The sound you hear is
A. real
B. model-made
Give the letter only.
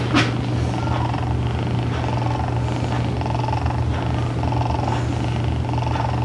A